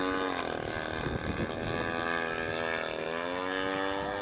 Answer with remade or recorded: recorded